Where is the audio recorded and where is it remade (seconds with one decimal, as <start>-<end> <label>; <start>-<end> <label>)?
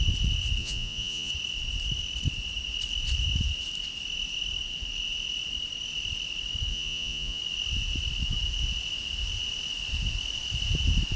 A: 0.0-0.6 recorded; 0.6-1.3 remade; 1.3-6.7 recorded; 6.7-7.4 remade; 7.4-11.2 recorded